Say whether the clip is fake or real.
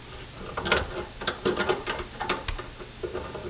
real